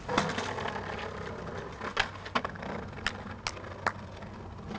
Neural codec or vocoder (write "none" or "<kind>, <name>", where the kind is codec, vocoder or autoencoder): none